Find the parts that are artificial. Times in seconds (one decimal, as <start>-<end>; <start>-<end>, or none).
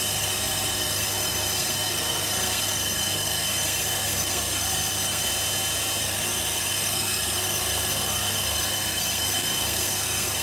0.0-5.3; 6.0-10.4